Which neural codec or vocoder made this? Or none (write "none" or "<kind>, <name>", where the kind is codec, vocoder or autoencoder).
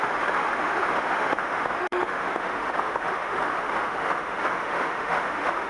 autoencoder, DAC-VAE